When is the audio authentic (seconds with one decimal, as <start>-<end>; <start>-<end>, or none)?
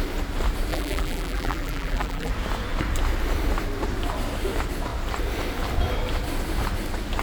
0.0-0.7; 2.3-7.2